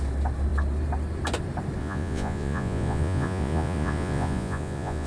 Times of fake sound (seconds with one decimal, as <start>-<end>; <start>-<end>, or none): 1.8-5.1